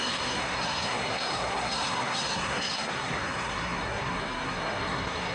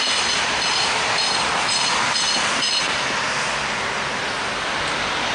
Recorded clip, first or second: second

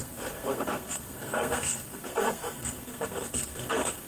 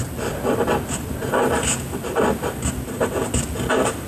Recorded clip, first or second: second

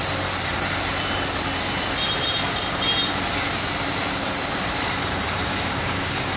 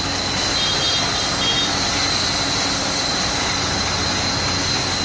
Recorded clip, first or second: second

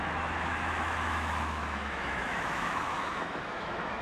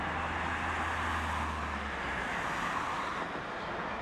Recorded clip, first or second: second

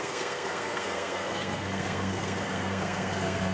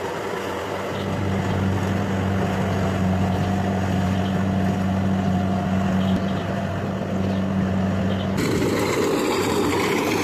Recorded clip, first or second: second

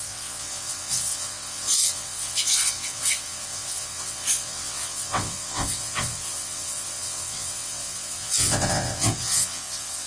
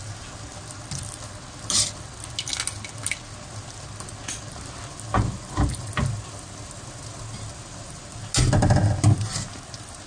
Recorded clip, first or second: second